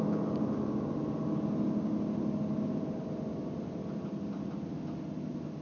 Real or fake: real